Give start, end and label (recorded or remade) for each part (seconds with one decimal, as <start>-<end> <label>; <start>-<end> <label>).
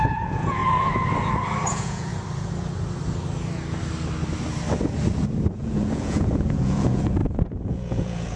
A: 0.0-0.6 remade; 0.6-1.7 recorded; 1.7-2.1 remade; 2.1-5.5 recorded; 5.5-8.4 remade